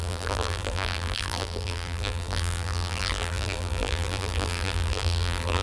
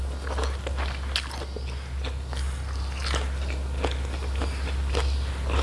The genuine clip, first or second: second